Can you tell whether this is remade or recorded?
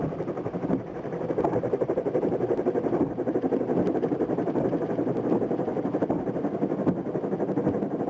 recorded